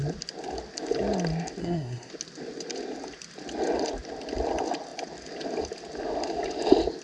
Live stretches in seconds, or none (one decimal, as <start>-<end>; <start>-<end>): 0.0-1.6; 2.1-7.0